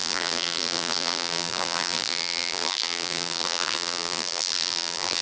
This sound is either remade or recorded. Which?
remade